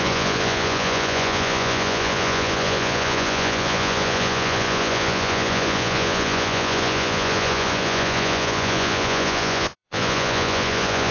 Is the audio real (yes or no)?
no